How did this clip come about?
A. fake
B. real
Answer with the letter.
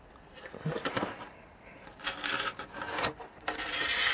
B